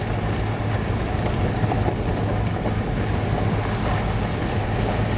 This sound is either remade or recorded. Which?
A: recorded